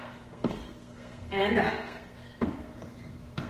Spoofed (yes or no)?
yes